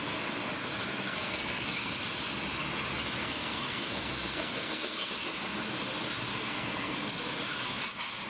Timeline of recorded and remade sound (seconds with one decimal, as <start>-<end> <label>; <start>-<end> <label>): 0.0-0.9 recorded; 0.9-1.9 remade; 1.9-3.2 recorded; 3.2-5.1 remade; 5.1-6.4 recorded; 6.4-7.1 remade; 7.1-8.3 recorded